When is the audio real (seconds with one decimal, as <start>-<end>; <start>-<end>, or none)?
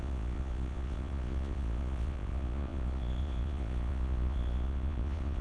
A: none